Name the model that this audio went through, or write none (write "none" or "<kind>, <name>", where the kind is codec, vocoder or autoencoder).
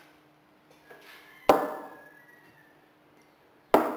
none